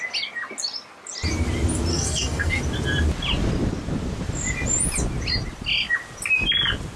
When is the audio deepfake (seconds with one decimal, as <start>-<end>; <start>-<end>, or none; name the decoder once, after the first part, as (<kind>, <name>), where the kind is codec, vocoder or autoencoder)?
1.9-2.6 (codec, SNAC)